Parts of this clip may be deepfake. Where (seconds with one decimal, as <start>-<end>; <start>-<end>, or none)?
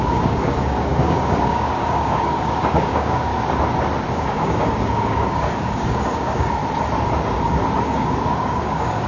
0.0-3.3; 4.1-6.6; 7.8-9.1